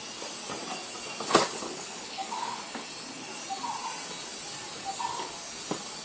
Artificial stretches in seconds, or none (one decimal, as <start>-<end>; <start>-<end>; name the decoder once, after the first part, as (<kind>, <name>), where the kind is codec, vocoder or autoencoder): 1.5-2.6 (codec, HILCodec)